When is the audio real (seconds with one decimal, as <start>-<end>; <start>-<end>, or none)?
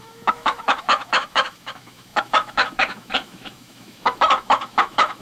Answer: none